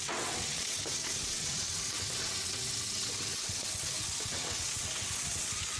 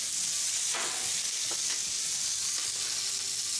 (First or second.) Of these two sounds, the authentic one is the second